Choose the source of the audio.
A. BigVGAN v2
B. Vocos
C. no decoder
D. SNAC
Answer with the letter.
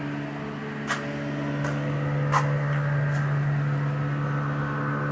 C